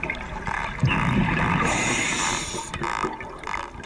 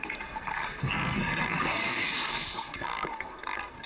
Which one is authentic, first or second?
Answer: first